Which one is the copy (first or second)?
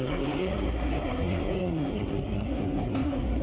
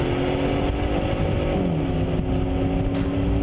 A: first